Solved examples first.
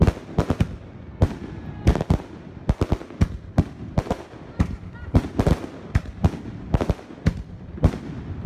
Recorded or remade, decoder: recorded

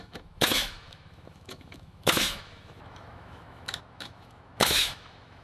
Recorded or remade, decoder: remade, autoencoder, DAC-VAE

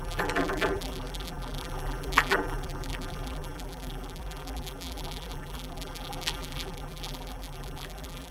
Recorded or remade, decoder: remade, vocoder, BigVGAN v2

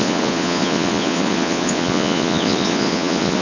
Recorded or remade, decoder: remade, vocoder, Vocos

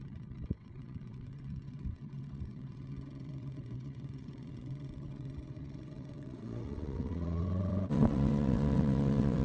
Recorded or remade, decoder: remade, vocoder, WaveNeXt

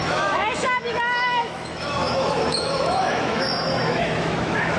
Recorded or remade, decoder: remade, autoencoder, DAC-VAE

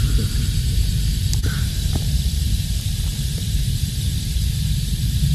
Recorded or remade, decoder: remade, vocoder, BigVGAN v2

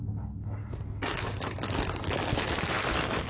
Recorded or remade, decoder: recorded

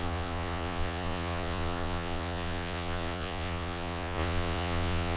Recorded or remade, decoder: remade, vocoder, Vocos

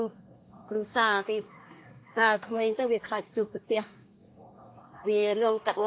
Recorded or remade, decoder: remade, codec, SNAC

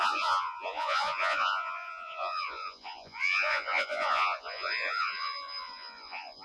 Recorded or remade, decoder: remade, vocoder, Vocos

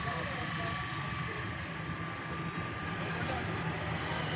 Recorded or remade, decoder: recorded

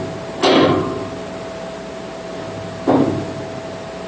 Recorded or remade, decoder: recorded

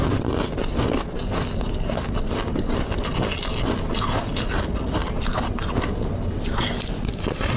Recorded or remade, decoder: recorded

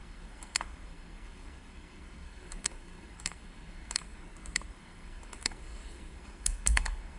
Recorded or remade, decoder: remade, codec, SNAC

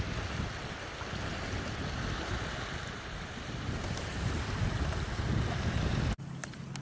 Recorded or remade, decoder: recorded